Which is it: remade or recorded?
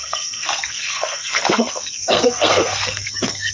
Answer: remade